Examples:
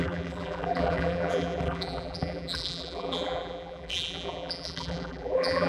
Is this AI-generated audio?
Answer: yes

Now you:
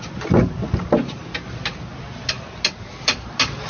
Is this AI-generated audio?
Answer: no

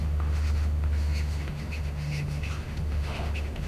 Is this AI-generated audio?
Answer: yes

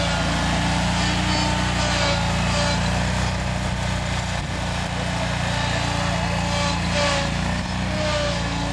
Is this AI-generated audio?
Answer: no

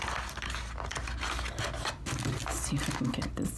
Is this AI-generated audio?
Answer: no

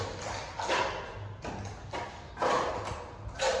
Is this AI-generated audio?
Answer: no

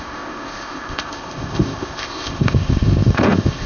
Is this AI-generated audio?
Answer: yes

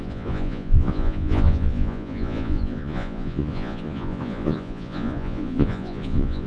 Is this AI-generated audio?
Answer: yes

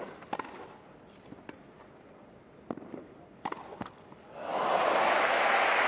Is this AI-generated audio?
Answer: no